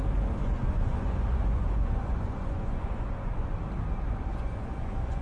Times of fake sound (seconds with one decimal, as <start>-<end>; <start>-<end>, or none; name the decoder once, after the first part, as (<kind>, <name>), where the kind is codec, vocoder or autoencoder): 0.4-3.5 (vocoder, Vocos); 4.3-5.2